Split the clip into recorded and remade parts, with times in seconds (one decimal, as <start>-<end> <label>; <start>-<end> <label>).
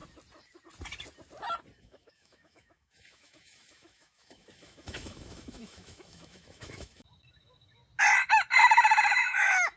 0.0-1.8 recorded; 1.8-7.8 remade; 7.8-9.1 recorded; 9.1-9.8 remade